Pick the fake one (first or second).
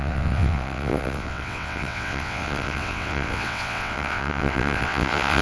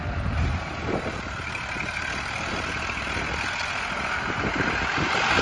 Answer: first